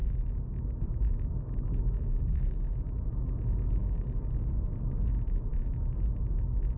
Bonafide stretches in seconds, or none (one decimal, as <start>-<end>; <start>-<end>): 3.3-3.8; 4.5-6.8